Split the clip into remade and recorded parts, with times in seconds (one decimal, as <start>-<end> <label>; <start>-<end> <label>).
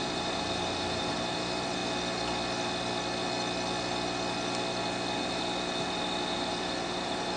0.0-1.8 remade; 1.8-5.2 recorded; 5.2-7.4 remade